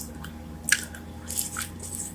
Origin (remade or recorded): recorded